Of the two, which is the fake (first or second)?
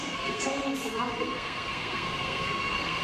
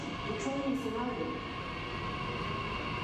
first